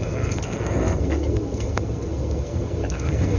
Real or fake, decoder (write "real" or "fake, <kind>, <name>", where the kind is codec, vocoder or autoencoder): fake, codec, SNAC